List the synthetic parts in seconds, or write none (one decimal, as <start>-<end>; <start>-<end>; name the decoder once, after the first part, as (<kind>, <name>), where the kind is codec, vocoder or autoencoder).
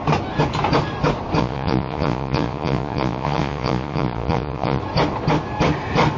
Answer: 1.4-4.8 (vocoder, Vocos)